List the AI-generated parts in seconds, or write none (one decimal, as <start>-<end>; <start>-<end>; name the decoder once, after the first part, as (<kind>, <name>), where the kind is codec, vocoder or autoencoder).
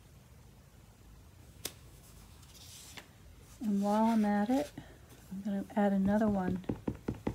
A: 1.4-2.5 (autoencoder, DAC-VAE)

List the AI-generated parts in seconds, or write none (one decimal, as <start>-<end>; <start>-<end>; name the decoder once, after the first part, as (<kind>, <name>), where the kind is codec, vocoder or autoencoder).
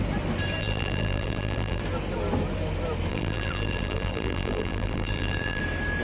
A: 0.6-1.8 (vocoder, BigVGAN v2); 3.1-5.6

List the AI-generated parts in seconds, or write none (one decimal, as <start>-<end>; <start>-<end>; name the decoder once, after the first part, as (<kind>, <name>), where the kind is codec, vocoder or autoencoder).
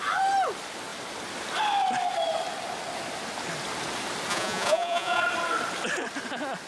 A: 4.3-5.2 (vocoder, Vocos)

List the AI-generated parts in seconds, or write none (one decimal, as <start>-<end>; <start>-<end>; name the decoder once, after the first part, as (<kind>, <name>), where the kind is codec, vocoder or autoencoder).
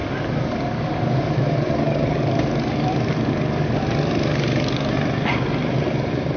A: 0.0-3.8 (codec, DAC); 4.3-5.0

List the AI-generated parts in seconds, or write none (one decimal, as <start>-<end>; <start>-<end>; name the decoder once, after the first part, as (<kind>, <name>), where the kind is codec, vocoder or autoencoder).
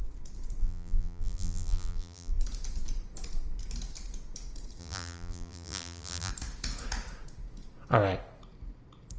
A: 0.6-2.3 (vocoder, BigVGAN v2); 4.8-6.3